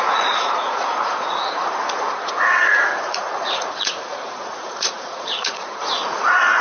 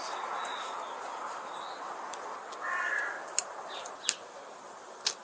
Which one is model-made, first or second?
first